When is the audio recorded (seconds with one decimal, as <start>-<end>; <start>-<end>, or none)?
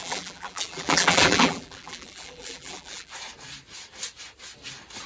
3.1-5.1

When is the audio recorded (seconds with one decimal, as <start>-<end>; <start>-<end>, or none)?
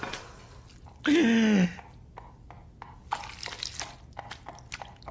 0.0-5.1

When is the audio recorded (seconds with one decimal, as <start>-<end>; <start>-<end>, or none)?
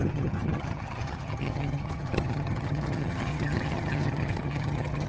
none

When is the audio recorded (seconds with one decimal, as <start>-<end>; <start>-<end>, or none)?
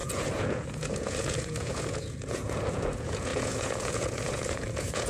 none